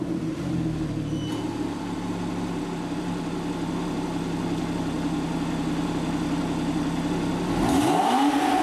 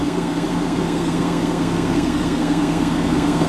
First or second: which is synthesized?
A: second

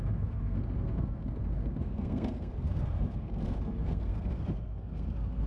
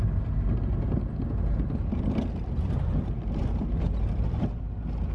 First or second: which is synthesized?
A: first